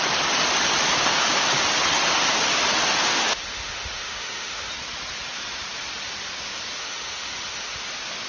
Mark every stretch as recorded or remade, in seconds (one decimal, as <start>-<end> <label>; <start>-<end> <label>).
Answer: 0.0-3.1 recorded; 3.1-4.7 remade; 4.7-6.8 recorded; 6.8-7.9 remade; 7.9-8.3 recorded

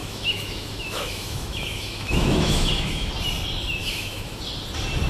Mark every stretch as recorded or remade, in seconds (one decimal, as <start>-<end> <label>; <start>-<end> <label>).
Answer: 0.0-3.1 remade; 3.1-3.8 recorded; 3.8-4.4 remade; 4.4-5.1 recorded

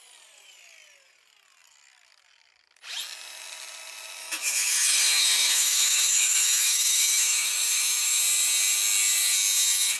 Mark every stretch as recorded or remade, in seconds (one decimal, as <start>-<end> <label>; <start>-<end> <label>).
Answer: 0.0-4.2 recorded; 4.2-8.2 remade; 8.2-10.0 recorded

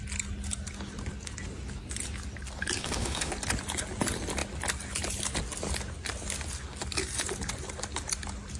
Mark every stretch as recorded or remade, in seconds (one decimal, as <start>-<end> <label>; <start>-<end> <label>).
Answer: 0.0-2.8 recorded; 2.8-3.3 remade; 3.3-8.6 recorded